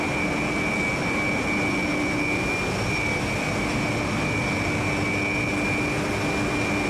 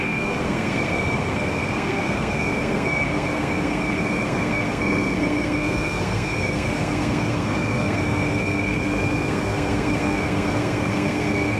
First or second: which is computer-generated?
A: second